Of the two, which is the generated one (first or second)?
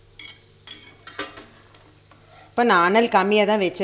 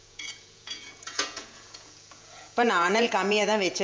second